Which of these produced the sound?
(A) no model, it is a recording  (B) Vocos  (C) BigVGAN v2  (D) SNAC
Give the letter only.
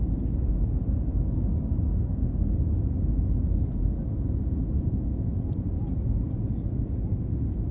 A